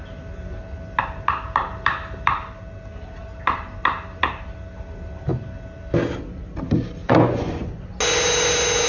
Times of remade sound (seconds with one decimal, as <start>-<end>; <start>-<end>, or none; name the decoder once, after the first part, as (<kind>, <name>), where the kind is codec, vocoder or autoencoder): 7.0-7.8 (vocoder, Vocos)